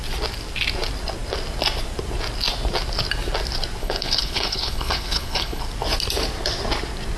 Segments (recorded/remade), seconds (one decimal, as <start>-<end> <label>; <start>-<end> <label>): 0.0-3.8 recorded; 3.8-5.6 remade; 5.6-7.2 recorded